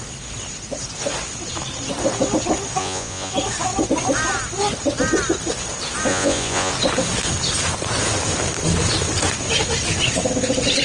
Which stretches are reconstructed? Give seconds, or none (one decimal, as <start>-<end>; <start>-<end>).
2.8-3.3; 6.1-6.7